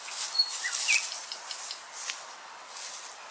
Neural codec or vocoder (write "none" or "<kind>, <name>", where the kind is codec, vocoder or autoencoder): none